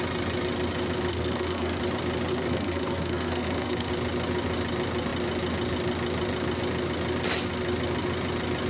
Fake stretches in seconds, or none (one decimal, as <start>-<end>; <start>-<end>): 1.1-1.8; 2.3-3.9